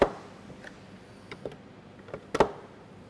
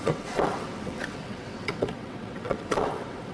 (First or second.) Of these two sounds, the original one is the first